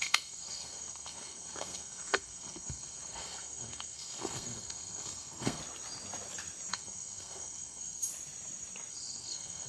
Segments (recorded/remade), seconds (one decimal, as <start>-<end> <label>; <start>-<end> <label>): 0.0-5.6 remade; 5.6-6.7 recorded; 6.7-8.1 remade; 8.1-8.9 recorded; 8.9-9.7 remade